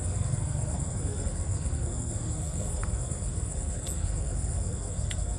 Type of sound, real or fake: fake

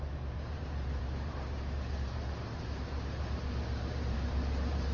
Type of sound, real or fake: fake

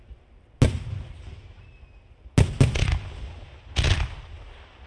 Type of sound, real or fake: real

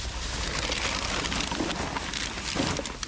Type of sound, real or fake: real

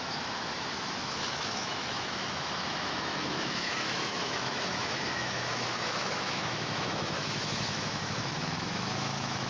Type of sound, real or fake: fake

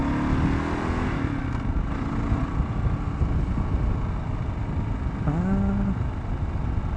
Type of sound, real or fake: real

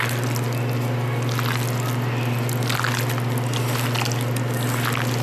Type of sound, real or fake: real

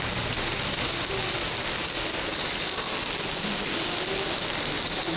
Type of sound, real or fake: real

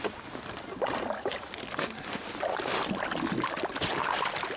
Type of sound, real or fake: real